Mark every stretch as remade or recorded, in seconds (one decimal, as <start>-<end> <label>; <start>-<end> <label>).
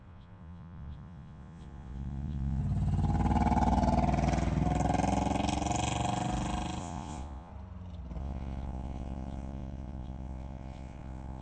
0.0-2.6 remade; 2.6-6.8 recorded; 6.8-7.5 remade; 7.5-8.2 recorded; 8.2-11.4 remade